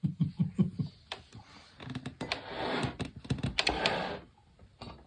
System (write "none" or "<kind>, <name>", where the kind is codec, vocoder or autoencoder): none